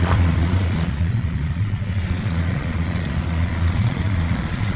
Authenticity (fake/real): fake